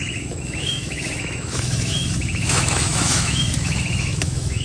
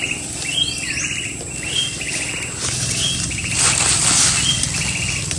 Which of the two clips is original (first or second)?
second